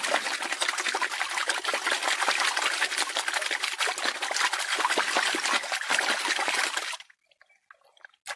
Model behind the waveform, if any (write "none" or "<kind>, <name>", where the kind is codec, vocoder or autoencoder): none